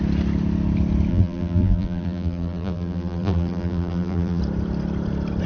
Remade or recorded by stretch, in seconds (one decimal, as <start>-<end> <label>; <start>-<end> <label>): 0.0-1.1 recorded; 1.1-4.4 remade; 4.4-5.5 recorded